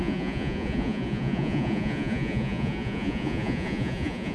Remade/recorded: remade